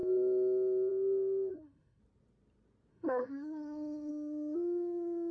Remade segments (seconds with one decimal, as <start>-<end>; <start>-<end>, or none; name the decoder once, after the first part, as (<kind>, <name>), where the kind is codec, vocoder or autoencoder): 1.5-2.0 (codec, SNAC); 2.9-4.1